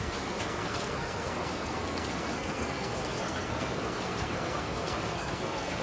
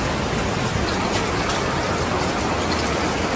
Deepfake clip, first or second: first